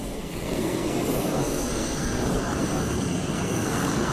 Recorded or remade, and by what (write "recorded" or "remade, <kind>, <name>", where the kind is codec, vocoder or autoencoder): remade, codec, SNAC